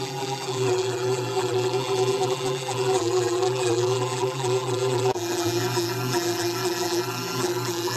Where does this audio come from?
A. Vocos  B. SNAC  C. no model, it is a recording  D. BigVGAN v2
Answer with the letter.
D